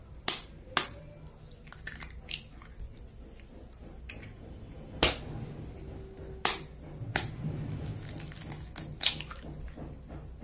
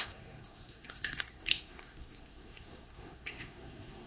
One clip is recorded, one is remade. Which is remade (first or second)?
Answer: second